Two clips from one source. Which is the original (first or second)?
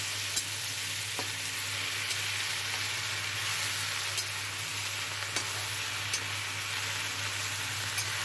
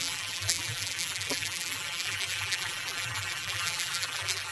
first